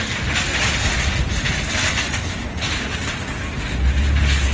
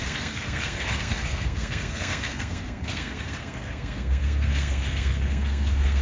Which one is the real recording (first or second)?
first